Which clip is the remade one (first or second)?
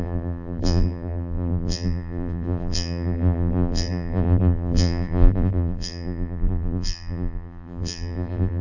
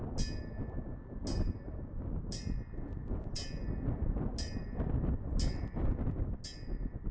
first